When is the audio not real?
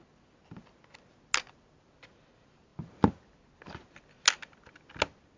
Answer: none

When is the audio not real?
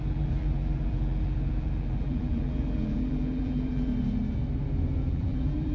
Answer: 0.0-3.9; 5.0-5.7